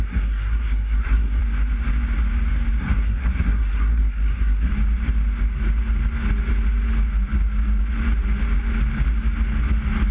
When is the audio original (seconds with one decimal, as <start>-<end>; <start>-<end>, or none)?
1.4-2.8; 4.7-10.1